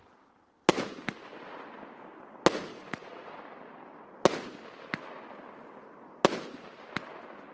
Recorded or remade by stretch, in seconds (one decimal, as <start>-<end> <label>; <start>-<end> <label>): 0.0-2.7 recorded; 2.7-3.4 remade; 3.4-7.5 recorded